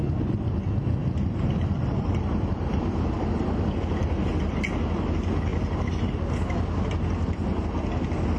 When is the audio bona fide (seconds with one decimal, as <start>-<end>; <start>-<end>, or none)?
0.0-1.0; 4.2-8.4